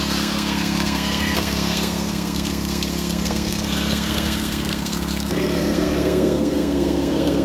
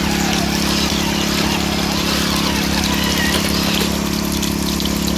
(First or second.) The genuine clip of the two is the second